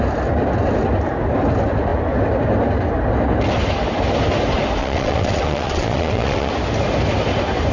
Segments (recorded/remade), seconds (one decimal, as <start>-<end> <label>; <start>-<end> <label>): 0.0-4.8 recorded; 4.8-6.5 remade; 6.5-7.7 recorded